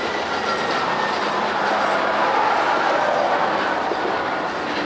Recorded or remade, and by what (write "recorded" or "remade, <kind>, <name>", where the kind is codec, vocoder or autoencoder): recorded